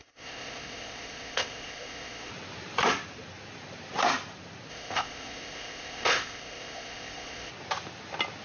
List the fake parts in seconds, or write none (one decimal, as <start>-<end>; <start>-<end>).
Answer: 0.0-2.3; 4.7-7.5